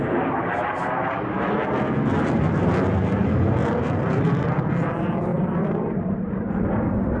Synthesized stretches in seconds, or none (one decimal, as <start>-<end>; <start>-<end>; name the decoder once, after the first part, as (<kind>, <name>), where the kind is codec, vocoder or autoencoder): 3.6-4.6 (vocoder, BigVGAN v2); 5.3-7.2